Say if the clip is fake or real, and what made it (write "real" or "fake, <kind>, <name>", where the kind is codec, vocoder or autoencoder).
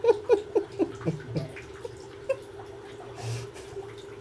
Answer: real